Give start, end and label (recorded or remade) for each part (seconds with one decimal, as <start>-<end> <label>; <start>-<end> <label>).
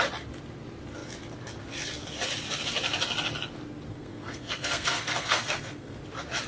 0.0-3.9 recorded; 3.9-6.0 remade; 6.0-6.5 recorded